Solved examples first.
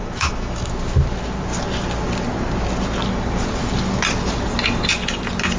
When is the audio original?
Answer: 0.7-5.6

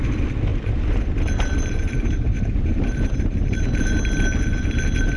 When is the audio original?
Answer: 0.0-0.5; 3.6-5.2

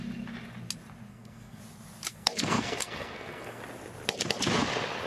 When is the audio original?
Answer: 0.0-1.1; 1.6-2.1; 3.6-5.1

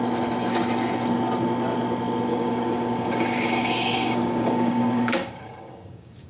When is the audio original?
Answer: 0.0-2.3

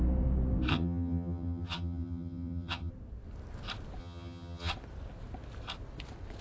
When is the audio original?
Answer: 0.0-0.7; 2.9-4.0; 4.7-6.4

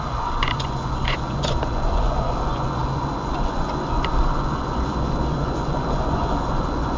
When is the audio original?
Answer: none

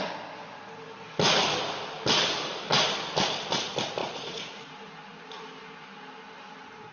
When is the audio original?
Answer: 0.0-4.0; 4.7-6.9

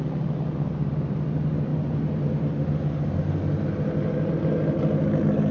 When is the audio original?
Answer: 0.0-5.5